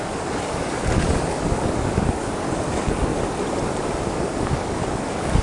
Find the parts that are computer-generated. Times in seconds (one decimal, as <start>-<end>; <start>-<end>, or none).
0.0-3.1; 4.1-5.4